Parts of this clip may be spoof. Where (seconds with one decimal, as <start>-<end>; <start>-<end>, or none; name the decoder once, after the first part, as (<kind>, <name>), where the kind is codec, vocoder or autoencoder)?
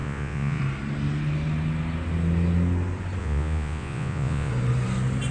0.0-0.6 (vocoder, Vocos); 3.2-4.5